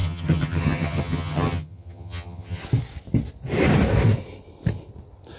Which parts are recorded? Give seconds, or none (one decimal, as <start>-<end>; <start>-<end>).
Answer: 2.6-5.4